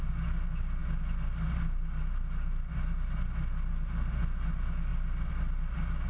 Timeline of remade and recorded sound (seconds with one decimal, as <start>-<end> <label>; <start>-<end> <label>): 0.0-6.1 recorded